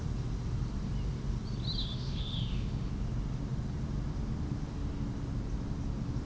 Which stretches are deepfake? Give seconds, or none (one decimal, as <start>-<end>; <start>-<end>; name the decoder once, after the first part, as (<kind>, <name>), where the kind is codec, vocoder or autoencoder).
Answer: 1.8-2.9 (autoencoder, DAC-VAE)